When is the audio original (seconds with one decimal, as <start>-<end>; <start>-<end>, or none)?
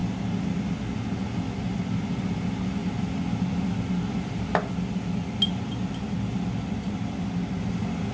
0.0-8.1